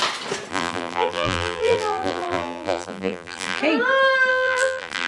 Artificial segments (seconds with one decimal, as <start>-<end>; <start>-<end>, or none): 0.5-3.6; 4.3-5.1